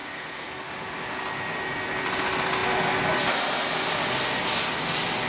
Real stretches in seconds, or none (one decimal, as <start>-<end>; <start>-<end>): 0.7-5.3